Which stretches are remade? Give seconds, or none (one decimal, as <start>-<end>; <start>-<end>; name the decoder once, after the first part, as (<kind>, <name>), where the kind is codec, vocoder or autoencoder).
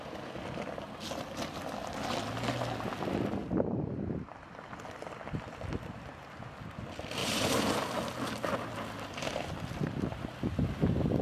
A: 3.4-3.9 (vocoder, BigVGAN v2); 7.2-7.8